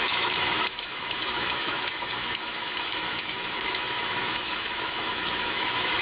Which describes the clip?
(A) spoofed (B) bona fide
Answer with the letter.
A